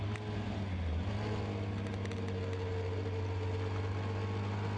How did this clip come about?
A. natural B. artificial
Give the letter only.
A